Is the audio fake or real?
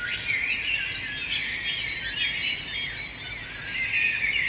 real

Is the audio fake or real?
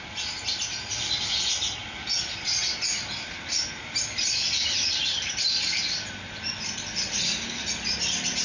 real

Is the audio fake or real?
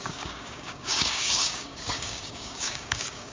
fake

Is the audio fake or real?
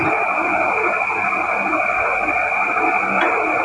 real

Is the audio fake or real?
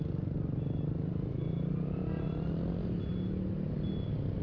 real